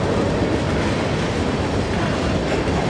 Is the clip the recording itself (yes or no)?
yes